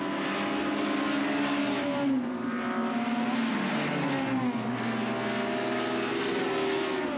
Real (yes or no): yes